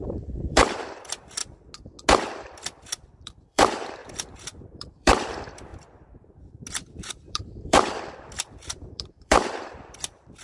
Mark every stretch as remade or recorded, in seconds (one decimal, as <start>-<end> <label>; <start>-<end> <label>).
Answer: 0.0-1.4 remade; 1.4-2.3 recorded; 2.3-4.0 remade; 4.0-4.6 recorded; 4.6-5.7 remade; 5.7-7.1 recorded; 7.1-10.4 remade

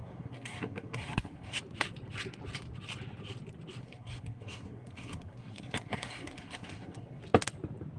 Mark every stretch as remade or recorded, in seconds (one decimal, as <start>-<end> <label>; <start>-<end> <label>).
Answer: 0.0-1.6 remade; 1.6-3.8 recorded; 3.8-7.2 remade; 7.2-8.0 recorded

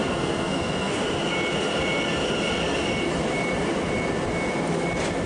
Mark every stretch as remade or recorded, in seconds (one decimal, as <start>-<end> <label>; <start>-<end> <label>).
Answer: 0.0-1.0 remade; 1.0-5.3 recorded

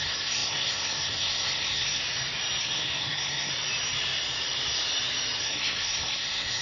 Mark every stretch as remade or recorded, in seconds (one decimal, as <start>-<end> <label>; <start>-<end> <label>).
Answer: 0.0-2.0 remade; 2.0-2.6 recorded; 2.6-3.5 remade; 3.5-5.4 recorded; 5.4-6.6 remade

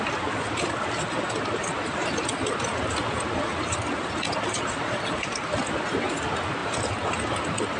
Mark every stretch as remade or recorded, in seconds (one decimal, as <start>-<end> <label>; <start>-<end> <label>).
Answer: 0.0-7.8 recorded